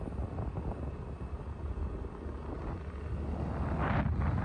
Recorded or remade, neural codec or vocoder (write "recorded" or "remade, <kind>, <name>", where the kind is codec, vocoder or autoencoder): recorded